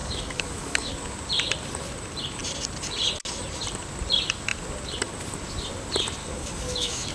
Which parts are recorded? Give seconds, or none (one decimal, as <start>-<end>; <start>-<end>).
0.9-6.2